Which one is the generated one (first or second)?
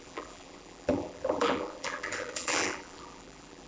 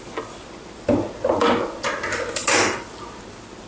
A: first